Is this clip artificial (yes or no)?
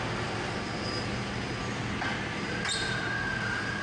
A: no